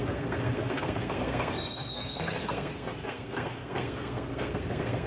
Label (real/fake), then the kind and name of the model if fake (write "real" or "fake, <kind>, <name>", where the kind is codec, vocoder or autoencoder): fake, codec, SNAC